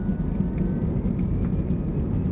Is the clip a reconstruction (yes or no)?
no